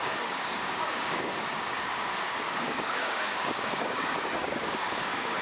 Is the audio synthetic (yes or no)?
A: yes